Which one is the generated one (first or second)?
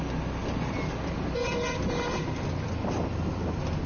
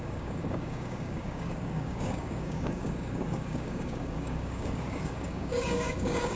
second